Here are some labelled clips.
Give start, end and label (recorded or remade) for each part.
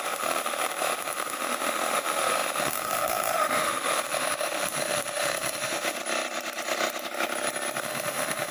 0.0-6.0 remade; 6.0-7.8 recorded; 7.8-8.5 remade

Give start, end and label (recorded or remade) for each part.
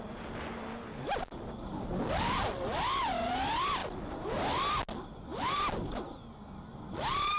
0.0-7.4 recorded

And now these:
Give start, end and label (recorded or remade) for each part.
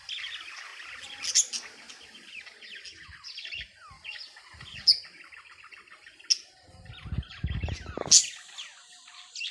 0.0-9.5 recorded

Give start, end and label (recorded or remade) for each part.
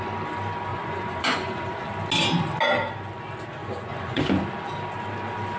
0.0-0.7 recorded; 0.7-1.8 remade; 1.8-3.6 recorded; 3.6-4.2 remade; 4.2-5.6 recorded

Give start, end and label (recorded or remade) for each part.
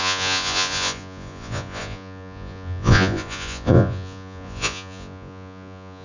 0.0-6.0 remade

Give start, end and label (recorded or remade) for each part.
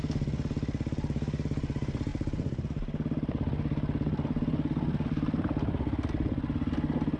0.0-7.2 recorded